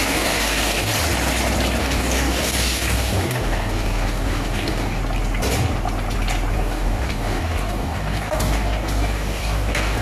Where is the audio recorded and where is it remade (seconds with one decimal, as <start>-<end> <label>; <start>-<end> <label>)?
0.0-0.9 remade; 0.9-1.8 recorded; 1.8-5.0 remade; 5.0-6.5 recorded; 6.5-10.0 remade